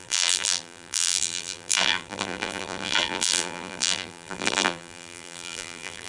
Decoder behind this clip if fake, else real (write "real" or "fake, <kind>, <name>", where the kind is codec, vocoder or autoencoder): fake, vocoder, BigVGAN v2